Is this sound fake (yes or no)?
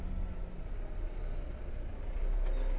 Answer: no